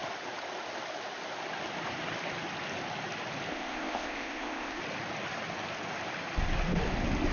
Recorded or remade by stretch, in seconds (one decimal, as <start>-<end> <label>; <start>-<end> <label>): 0.0-3.5 recorded; 3.5-4.8 remade; 4.8-7.3 recorded

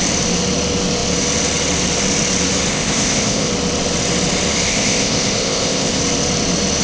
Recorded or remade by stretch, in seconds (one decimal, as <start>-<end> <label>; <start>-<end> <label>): 0.0-2.7 recorded; 2.7-3.5 remade; 3.5-4.7 recorded; 4.7-6.0 remade; 6.0-6.8 recorded

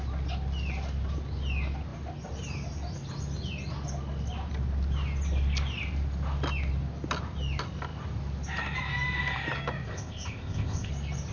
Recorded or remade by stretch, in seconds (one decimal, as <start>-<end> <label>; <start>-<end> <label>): 0.0-9.9 recorded; 9.9-10.9 remade; 10.9-11.3 recorded

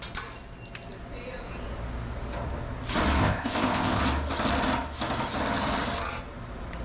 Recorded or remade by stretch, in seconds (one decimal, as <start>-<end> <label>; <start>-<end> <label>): 0.0-3.2 recorded; 3.2-4.0 remade; 4.0-6.8 recorded

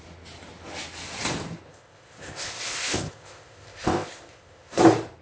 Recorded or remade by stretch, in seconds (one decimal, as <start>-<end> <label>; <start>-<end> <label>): 0.0-1.7 recorded; 1.7-4.8 remade; 4.8-5.2 recorded

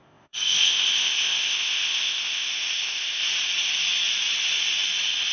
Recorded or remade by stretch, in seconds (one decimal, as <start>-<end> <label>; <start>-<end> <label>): 0.0-3.2 remade; 3.2-5.3 recorded